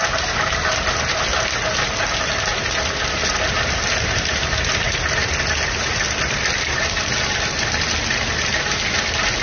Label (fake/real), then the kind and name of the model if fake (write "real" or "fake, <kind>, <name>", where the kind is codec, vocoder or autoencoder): real